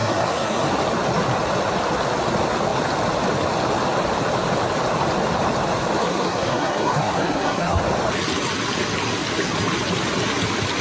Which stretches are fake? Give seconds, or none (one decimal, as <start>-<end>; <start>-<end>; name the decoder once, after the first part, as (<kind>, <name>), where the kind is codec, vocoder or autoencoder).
0.0-0.7 (codec, SNAC); 6.0-7.8